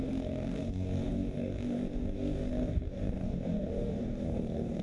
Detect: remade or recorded remade